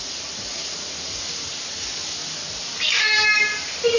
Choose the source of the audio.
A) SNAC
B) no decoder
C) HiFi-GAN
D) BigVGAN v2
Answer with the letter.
B